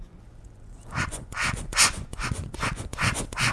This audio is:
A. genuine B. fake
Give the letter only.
B